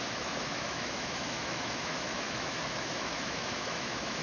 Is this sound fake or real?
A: fake